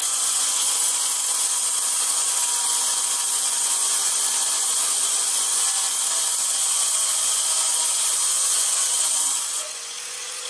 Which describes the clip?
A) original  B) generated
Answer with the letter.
B